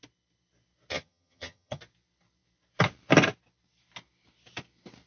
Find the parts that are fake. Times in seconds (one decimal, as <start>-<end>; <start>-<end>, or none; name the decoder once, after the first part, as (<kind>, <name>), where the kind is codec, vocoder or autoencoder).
0.9-1.8 (vocoder, HiFi-GAN)